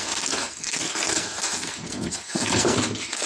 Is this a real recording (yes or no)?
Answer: no